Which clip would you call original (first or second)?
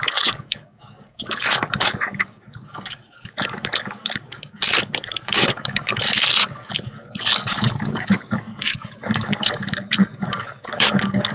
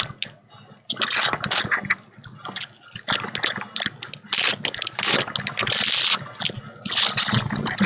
second